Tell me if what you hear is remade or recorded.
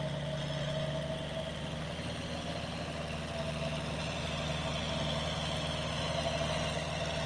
recorded